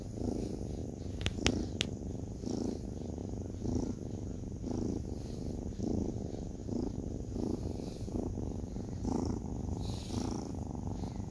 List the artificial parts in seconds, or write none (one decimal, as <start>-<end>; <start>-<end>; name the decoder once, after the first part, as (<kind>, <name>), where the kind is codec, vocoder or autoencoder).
6.6-9.5 (vocoder, BigVGAN v2)